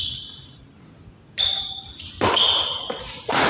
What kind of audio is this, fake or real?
real